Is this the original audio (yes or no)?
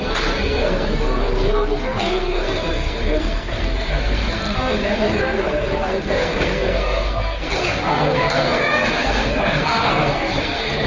no